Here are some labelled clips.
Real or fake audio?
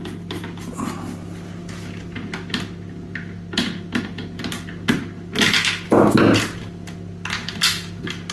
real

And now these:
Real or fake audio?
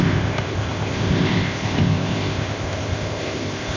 fake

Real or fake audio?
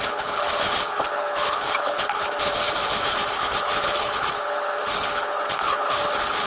fake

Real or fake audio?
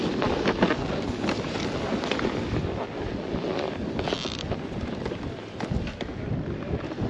real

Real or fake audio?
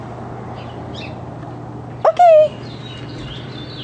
real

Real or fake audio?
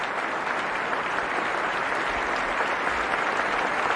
real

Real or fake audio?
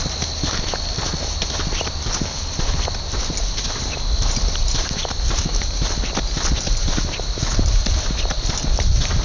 real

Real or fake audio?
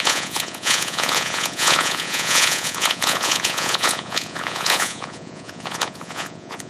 fake